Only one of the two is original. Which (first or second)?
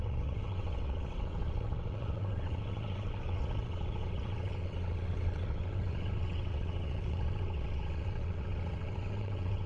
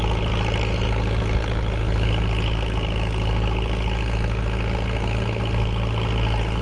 second